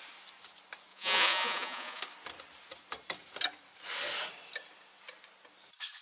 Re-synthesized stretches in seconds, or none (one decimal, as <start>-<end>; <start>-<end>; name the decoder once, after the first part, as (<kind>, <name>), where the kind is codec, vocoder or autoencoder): 0.9-2.0 (vocoder, Vocos)